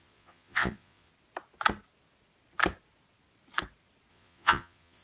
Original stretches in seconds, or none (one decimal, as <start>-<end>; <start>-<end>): 1.1-4.1